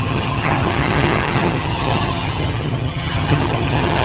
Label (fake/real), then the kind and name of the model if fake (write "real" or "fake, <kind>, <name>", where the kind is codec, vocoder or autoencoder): fake, vocoder, HiFi-GAN